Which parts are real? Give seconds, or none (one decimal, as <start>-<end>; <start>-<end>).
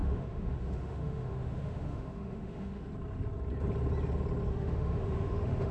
2.9-4.5